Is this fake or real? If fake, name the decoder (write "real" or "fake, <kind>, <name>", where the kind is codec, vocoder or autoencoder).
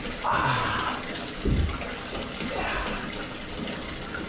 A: fake, vocoder, BigVGAN v2